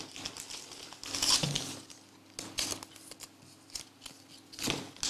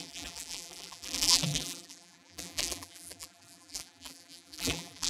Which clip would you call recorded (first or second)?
first